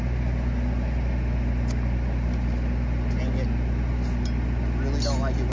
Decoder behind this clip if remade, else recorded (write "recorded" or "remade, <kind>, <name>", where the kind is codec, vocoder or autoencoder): recorded